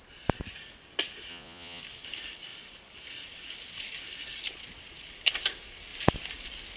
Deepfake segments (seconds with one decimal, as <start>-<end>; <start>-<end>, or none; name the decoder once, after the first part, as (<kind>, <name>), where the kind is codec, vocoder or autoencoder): 1.3-1.8 (vocoder, Vocos)